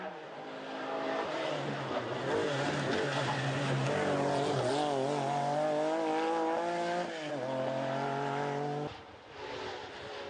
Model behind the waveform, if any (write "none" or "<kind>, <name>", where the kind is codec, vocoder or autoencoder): none